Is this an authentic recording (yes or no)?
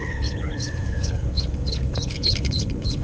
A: no